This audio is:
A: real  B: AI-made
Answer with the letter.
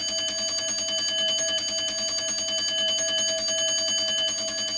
A